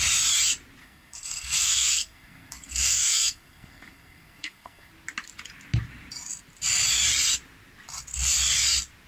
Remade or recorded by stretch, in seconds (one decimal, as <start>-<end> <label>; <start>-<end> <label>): 0.0-0.8 recorded; 0.8-4.9 remade; 4.9-9.1 recorded